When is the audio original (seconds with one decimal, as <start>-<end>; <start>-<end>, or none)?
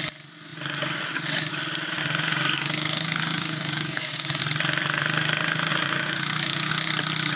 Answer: 0.0-2.0; 4.4-5.7; 6.7-7.4